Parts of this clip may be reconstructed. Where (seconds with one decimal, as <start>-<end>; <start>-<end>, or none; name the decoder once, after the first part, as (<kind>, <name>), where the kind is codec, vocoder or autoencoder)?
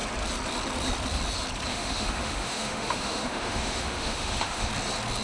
1.7-4.7 (autoencoder, DAC-VAE)